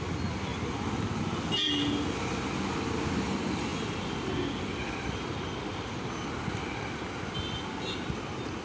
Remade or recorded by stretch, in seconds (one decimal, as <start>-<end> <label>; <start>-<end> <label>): 0.0-8.6 recorded